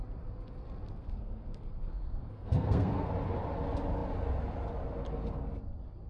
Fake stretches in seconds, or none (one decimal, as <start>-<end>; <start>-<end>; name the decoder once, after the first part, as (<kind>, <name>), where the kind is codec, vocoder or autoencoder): 1.0-3.1 (codec, SNAC)

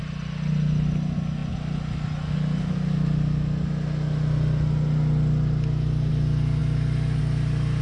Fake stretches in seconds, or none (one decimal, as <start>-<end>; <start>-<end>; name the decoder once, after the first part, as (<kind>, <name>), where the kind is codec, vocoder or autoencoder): none

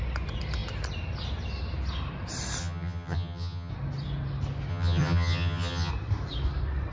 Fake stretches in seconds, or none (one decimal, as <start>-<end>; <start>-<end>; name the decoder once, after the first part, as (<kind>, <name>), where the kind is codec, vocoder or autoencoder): 2.6-3.7 (vocoder, HiFi-GAN); 4.7-5.9

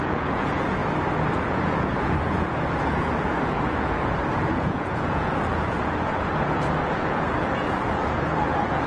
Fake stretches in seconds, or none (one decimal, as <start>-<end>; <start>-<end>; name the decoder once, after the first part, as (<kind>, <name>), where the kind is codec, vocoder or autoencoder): 0.0-0.8 (vocoder, Vocos); 1.3-8.9

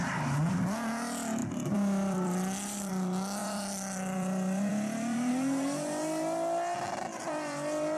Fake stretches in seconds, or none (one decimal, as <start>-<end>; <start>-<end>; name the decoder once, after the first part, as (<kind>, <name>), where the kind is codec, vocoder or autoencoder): 1.4-2.9 (vocoder, BigVGAN v2); 3.4-5.3

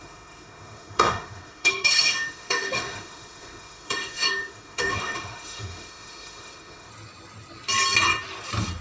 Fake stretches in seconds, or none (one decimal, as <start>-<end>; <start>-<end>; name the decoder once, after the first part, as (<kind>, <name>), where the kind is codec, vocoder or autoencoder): 0.0-6.9 (autoencoder, DAC-VAE)

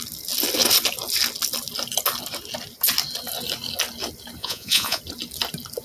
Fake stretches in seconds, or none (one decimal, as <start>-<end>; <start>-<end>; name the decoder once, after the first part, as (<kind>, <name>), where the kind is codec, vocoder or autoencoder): 4.4-5.0 (vocoder, Vocos)

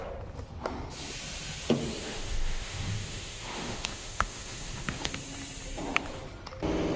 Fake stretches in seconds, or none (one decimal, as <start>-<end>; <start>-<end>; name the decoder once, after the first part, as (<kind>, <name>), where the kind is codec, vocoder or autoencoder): 1.8-5.1 (autoencoder, DAC-VAE)